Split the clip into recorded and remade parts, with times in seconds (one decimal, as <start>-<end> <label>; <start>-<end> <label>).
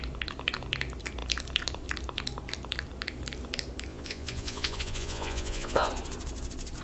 0.0-3.9 recorded; 3.9-5.9 remade; 5.9-6.8 recorded